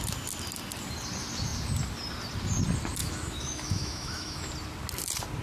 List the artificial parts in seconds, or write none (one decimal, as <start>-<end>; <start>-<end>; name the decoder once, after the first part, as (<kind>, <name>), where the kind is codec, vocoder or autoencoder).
3.0-4.5 (autoencoder, DAC-VAE)